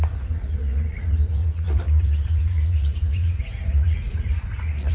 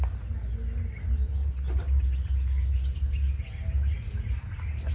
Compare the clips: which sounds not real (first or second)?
first